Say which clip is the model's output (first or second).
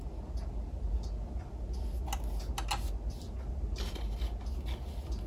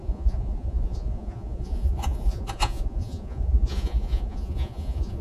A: second